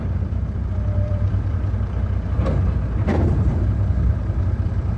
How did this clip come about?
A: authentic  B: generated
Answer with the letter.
B